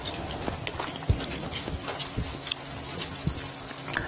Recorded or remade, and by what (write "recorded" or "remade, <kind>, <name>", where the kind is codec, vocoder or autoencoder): recorded